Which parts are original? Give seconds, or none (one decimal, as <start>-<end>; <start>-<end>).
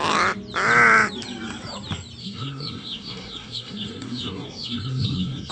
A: 0.0-2.2